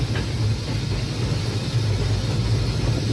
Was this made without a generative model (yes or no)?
yes